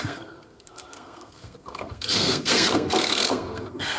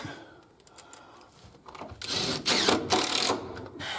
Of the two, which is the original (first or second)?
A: second